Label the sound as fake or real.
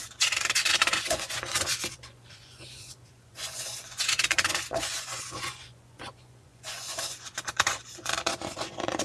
fake